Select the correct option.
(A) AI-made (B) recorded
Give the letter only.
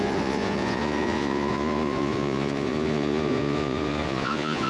A